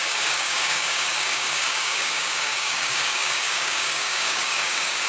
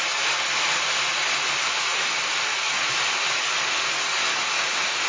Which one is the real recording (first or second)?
second